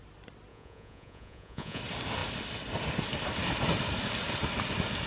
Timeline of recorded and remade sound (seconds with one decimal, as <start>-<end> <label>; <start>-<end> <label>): 0.0-0.5 recorded; 0.5-1.8 remade; 1.8-5.1 recorded